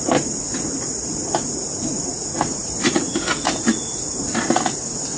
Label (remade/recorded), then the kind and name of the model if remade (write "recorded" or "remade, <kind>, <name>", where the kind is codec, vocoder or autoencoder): recorded